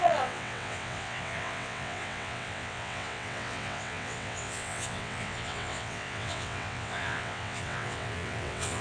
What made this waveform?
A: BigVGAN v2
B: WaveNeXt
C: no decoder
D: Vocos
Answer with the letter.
B